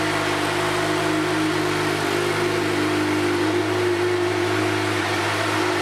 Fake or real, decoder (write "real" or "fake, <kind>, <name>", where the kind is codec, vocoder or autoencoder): real